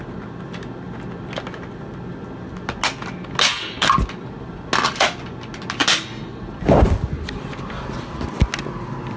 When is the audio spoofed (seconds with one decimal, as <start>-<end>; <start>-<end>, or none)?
none